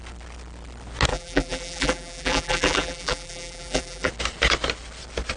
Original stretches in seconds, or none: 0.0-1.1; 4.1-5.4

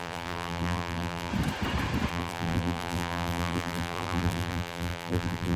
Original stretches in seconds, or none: 1.3-2.1

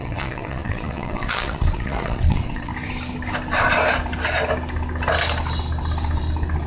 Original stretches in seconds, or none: 2.7-6.7

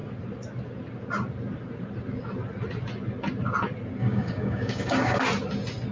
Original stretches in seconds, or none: 0.0-4.0; 5.2-5.9

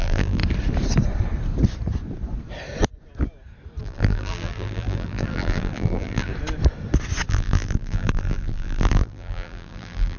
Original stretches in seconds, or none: 0.4-3.8; 6.3-7.3

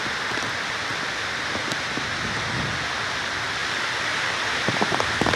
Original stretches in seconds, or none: 0.0-0.9; 1.7-3.6; 4.6-5.4